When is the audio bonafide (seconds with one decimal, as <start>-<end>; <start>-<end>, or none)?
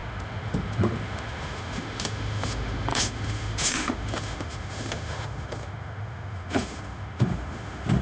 none